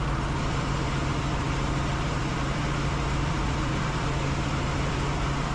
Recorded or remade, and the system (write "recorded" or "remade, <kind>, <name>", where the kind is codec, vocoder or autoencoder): remade, vocoder, BigVGAN v2